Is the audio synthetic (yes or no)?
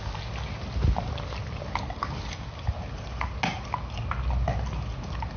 no